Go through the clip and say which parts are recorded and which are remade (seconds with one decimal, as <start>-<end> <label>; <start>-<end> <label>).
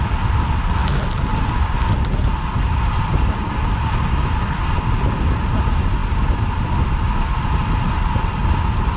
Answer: 0.0-9.0 recorded